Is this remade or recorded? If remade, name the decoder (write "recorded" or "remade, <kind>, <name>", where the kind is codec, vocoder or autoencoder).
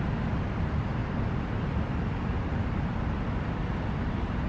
recorded